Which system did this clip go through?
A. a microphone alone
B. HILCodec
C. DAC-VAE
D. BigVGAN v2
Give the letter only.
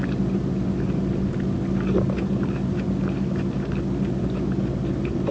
A